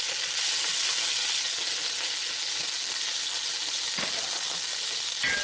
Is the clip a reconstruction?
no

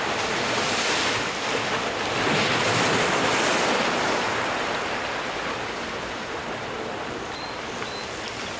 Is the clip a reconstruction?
no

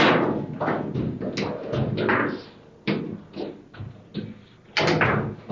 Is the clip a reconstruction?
no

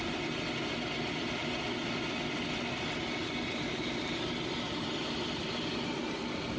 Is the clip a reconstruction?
no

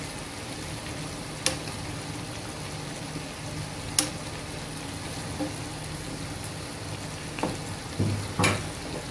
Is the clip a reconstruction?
no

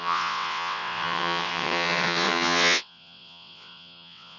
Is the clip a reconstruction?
yes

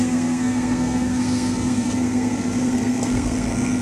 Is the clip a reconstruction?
yes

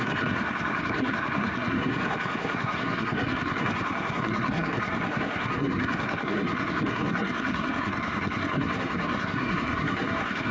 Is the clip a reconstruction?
yes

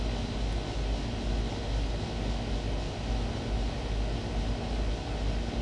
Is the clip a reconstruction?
no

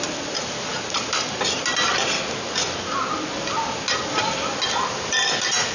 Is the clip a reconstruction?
no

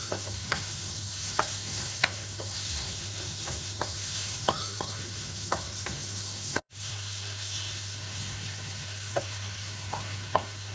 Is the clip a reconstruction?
yes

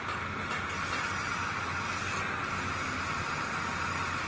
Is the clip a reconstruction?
no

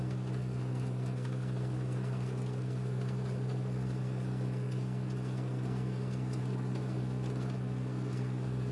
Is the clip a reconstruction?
yes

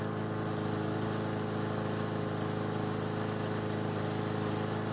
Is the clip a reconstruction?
no